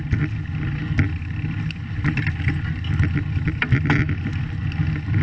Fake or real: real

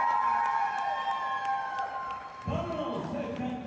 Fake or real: real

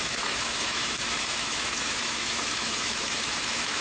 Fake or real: fake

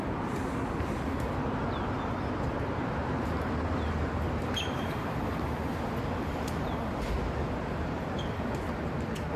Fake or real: real